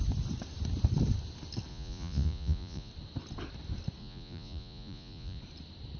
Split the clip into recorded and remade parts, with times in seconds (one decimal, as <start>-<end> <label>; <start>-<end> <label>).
0.0-1.7 recorded; 1.7-2.9 remade; 2.9-4.0 recorded; 4.0-5.4 remade; 5.4-6.0 recorded